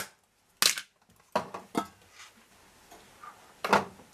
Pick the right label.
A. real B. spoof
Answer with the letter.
A